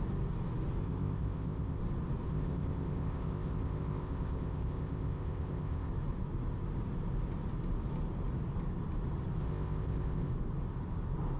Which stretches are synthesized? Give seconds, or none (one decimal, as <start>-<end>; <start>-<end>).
0.8-1.8; 2.3-5.9; 9.4-10.3